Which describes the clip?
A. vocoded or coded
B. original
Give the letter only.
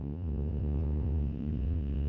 A